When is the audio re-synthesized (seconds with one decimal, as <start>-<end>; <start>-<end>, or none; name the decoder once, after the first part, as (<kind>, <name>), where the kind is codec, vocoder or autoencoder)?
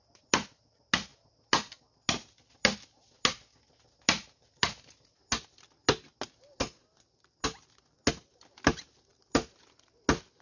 none